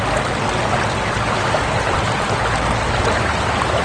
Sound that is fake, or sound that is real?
real